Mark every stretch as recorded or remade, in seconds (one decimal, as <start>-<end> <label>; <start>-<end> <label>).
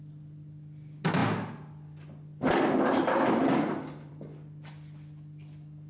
0.0-5.9 recorded